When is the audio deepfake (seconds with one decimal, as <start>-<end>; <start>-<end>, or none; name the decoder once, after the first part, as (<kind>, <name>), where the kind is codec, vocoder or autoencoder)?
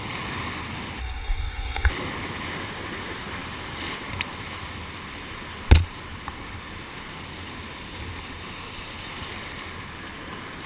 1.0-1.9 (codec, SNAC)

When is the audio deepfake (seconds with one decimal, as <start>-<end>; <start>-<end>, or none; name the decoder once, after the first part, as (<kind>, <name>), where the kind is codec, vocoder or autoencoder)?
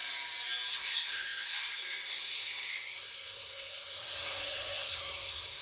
0.7-5.6 (codec, SNAC)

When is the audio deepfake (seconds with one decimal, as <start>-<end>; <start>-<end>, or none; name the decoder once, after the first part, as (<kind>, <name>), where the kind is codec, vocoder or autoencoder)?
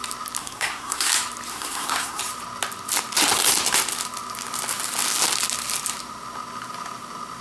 0.4-1.1 (codec, SNAC); 1.5-2.2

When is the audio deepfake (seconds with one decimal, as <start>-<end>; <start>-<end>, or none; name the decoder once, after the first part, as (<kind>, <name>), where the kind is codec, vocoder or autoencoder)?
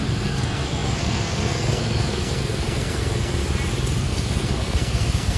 0.0-3.4 (codec, SNAC); 4.0-5.4